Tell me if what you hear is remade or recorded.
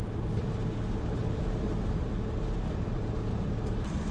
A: recorded